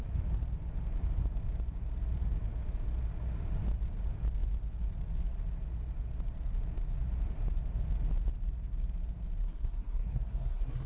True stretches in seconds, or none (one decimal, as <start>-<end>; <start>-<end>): 0.0-9.4

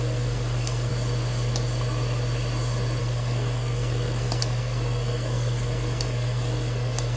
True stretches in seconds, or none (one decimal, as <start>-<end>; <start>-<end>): 0.9-3.0

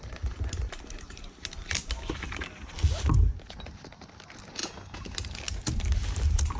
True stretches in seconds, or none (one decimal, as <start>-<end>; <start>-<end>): 0.0-6.6

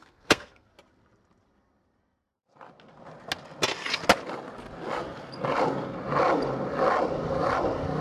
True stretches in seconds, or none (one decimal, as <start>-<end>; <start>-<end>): 0.7-8.0

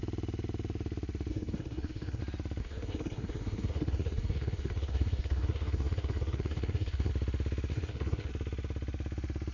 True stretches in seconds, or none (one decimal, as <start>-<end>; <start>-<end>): 0.0-1.3; 2.2-2.6; 7.1-7.7; 8.3-9.5

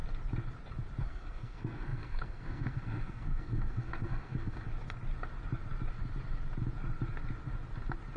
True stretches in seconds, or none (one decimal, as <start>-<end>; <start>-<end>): 0.0-1.0; 4.7-8.2

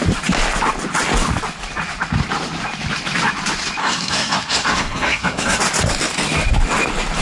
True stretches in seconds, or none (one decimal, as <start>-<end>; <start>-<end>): 0.0-3.8; 5.6-7.2

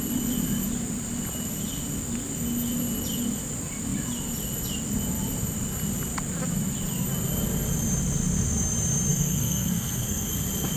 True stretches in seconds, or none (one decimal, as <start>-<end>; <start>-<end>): 0.0-9.1; 10.3-10.8